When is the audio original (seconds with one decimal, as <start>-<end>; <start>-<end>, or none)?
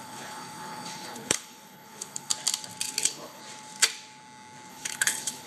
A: 2.3-3.0; 3.4-4.7